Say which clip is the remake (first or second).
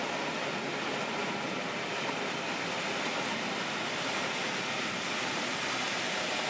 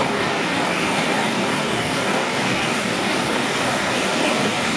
second